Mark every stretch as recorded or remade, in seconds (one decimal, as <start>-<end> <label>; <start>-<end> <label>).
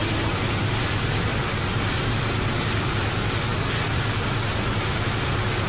0.0-2.9 remade; 2.9-3.5 recorded; 3.5-4.3 remade; 4.3-5.7 recorded